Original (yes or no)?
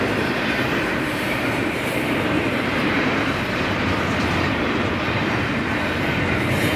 no